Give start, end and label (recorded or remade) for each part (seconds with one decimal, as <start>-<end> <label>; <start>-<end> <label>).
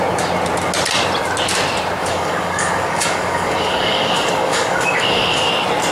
0.0-2.0 recorded; 2.0-5.5 remade; 5.5-5.9 recorded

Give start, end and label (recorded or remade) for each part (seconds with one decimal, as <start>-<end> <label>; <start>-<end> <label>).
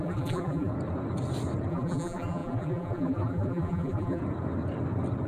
0.0-0.7 remade; 0.7-1.7 recorded; 1.7-4.2 remade; 4.2-5.3 recorded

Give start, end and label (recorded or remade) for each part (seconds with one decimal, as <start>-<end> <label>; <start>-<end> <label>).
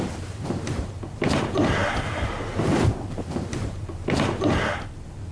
0.0-3.9 remade; 3.9-4.5 recorded; 4.5-5.3 remade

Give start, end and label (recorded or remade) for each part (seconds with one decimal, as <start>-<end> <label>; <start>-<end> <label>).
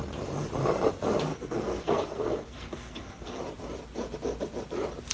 0.0-1.3 recorded; 1.3-3.4 remade; 3.4-5.1 recorded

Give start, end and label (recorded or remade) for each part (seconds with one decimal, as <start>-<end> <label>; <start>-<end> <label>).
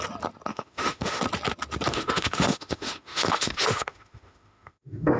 0.0-0.5 recorded; 0.5-1.2 remade; 1.2-1.9 recorded; 1.9-5.2 remade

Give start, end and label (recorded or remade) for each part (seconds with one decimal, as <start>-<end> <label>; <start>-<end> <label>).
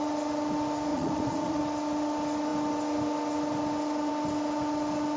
0.0-0.9 recorded; 0.9-1.6 remade; 1.6-5.2 recorded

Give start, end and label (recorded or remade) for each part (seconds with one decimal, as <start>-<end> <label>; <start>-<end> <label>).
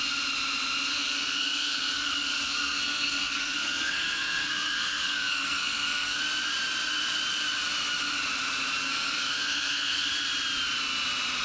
0.0-0.9 recorded; 0.9-6.2 remade; 6.2-8.8 recorded; 8.8-10.1 remade; 10.1-11.4 recorded